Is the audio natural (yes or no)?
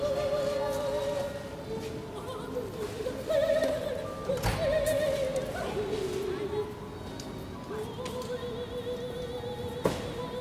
yes